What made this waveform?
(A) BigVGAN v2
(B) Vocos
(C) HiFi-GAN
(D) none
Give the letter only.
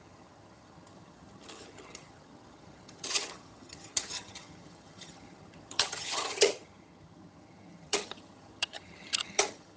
C